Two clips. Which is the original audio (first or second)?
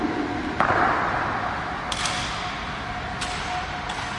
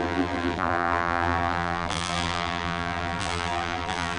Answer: first